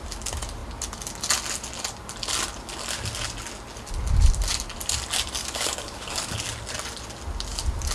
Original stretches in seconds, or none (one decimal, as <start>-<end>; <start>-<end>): 0.0-5.4; 6.3-7.9